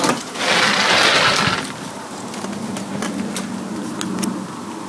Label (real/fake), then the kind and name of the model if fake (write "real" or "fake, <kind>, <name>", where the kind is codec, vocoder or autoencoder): real